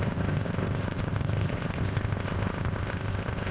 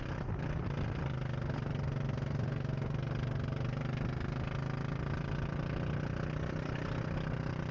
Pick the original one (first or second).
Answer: second